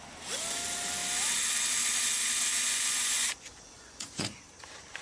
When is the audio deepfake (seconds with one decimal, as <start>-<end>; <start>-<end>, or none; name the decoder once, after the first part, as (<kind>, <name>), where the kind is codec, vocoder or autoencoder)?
2.5-4.4 (vocoder, Vocos)